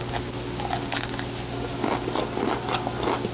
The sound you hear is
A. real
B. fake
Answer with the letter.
A